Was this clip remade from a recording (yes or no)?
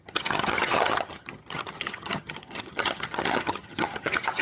yes